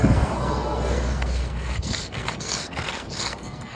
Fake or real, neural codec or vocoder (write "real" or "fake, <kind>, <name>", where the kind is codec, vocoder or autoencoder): fake, codec, SNAC